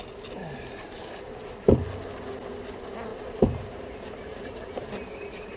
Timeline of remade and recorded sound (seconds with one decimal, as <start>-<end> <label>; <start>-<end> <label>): 0.0-3.1 recorded; 3.1-5.6 remade